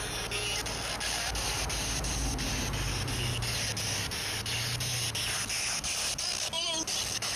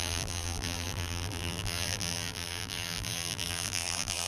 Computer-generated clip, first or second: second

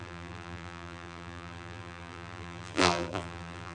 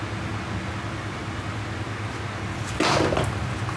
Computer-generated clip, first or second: first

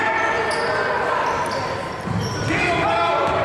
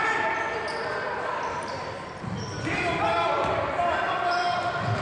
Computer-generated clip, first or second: second